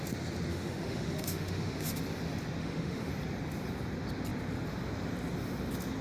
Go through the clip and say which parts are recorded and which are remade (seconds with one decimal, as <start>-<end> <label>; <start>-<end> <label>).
0.0-0.5 recorded; 0.5-2.0 remade; 2.0-2.6 recorded; 2.6-3.1 remade; 3.1-6.0 recorded

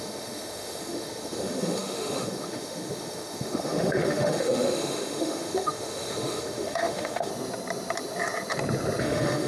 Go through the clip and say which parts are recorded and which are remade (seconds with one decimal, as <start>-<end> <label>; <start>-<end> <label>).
0.0-7.3 remade; 7.3-9.0 recorded; 9.0-9.5 remade